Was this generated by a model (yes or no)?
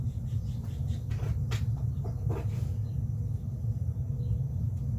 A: no